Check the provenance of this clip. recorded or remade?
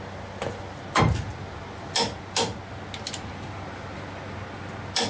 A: recorded